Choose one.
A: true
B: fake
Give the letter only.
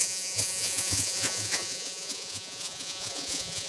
B